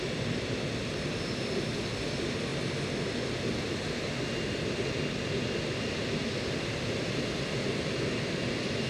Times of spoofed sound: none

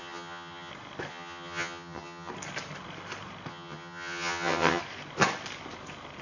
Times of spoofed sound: 0.0-0.7 (vocoder, HiFi-GAN); 1.1-2.3; 3.5-4.8

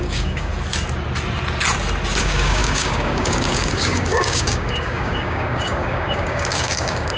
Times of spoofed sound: 0.0-0.5 (codec, DAC); 2.2-7.2

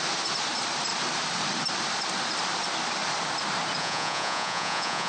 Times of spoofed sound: 3.8-5.1 (vocoder, Vocos)

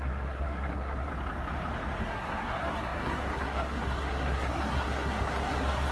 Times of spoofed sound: 0.0-1.1 (codec, SNAC); 2.0-5.9

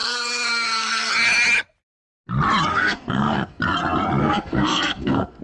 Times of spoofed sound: 0.0-1.1 (codec, SNAC); 2.7-3.6; 4.2-5.4

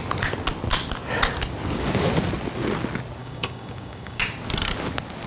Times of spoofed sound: 3.2-4.2 (codec, DAC)

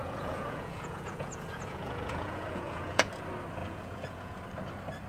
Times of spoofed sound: 0.0-3.1 (vocoder, Vocos); 3.6-4.4